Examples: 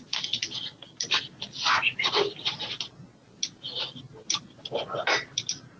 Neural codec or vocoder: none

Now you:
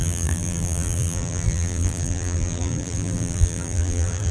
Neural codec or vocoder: vocoder, BigVGAN v2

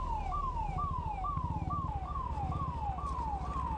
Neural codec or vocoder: none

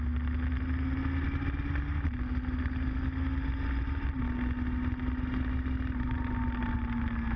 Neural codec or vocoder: none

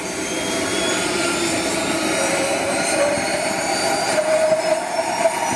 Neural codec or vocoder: vocoder, BigVGAN v2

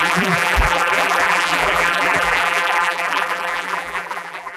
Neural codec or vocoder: vocoder, BigVGAN v2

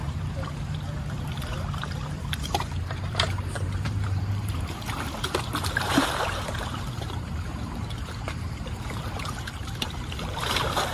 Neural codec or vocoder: vocoder, BigVGAN v2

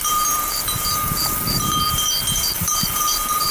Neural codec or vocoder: vocoder, BigVGAN v2